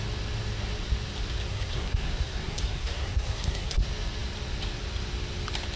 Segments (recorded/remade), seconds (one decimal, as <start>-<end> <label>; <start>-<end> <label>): 0.0-1.5 recorded; 1.5-3.8 remade; 3.8-5.8 recorded